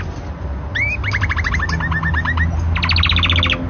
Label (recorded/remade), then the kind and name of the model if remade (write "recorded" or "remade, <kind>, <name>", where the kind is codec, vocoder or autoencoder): recorded